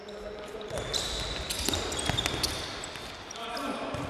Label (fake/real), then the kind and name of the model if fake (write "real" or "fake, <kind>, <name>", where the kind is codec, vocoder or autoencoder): real